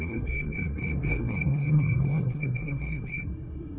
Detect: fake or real fake